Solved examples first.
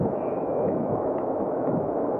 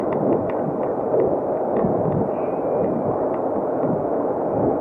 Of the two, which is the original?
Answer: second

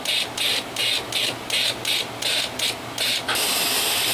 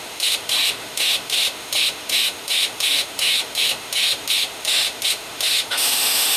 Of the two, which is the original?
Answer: first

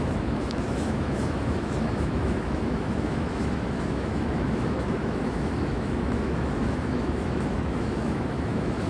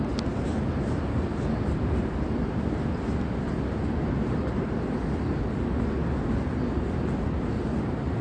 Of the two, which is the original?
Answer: second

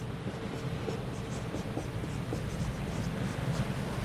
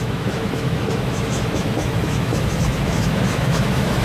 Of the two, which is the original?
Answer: first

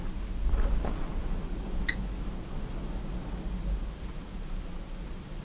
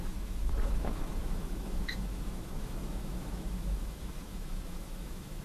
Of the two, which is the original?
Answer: first